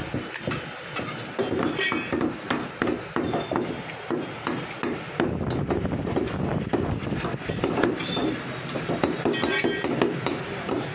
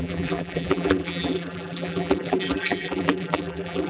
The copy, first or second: second